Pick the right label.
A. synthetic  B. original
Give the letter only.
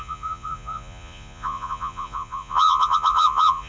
A